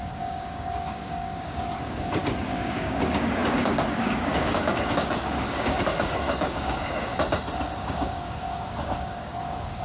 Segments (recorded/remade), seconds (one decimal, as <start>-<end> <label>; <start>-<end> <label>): 0.0-7.1 remade; 7.1-7.8 recorded; 7.8-9.8 remade